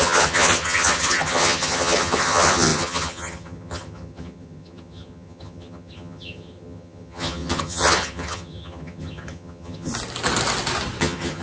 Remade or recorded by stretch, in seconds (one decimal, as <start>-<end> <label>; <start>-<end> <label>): 0.0-9.9 remade; 9.9-11.0 recorded; 11.0-11.4 remade